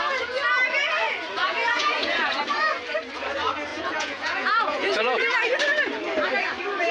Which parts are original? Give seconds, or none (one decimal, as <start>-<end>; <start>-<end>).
0.0-1.4; 2.4-3.7; 5.3-6.9